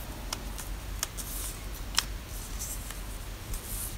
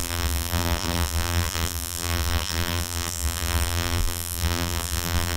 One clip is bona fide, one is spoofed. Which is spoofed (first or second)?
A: second